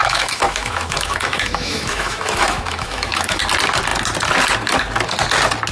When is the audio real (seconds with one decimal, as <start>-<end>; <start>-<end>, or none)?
3.4-5.7